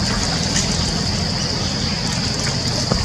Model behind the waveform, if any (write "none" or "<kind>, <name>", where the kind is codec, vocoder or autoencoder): none